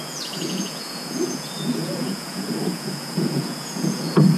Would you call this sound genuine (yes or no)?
no